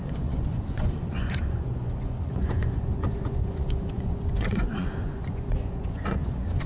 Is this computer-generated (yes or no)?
yes